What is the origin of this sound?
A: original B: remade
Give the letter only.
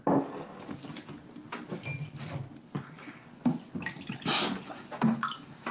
A